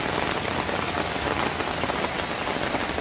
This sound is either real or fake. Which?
real